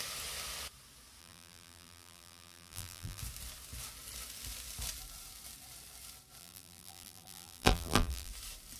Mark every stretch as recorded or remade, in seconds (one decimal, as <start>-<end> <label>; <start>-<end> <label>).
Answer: 0.0-1.2 recorded; 1.2-3.2 remade; 3.2-6.4 recorded; 6.4-8.3 remade; 8.3-8.8 recorded